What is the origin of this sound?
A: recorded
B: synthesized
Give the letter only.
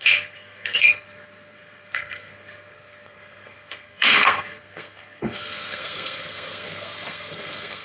B